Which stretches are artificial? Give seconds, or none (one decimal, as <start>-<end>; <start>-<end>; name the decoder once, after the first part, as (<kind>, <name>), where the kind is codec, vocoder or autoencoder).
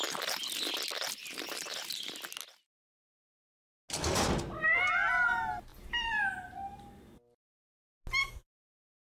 1.2-2.1 (vocoder, BigVGAN v2); 5.7-6.8